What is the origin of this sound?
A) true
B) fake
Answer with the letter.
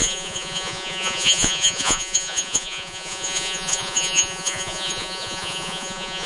B